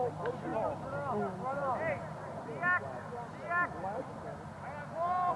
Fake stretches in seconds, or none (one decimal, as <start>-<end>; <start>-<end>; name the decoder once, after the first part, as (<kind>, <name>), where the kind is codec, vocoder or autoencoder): none